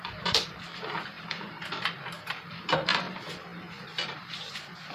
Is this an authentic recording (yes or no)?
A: no